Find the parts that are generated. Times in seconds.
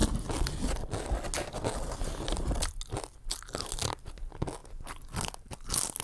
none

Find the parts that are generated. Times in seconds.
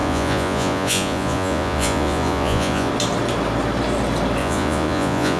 0.0-2.9; 4.4-5.4